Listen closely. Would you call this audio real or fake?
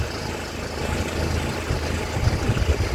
real